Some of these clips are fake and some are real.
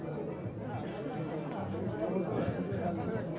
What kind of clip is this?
real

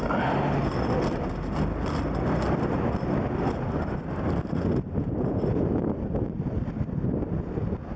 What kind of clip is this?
real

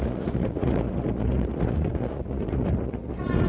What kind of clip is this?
fake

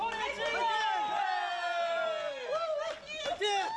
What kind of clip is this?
real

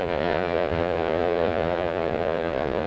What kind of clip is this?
fake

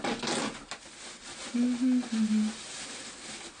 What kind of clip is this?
real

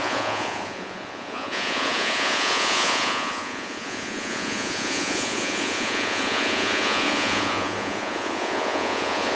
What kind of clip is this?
fake